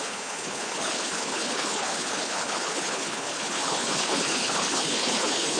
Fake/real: fake